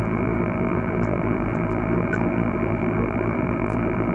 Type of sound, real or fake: fake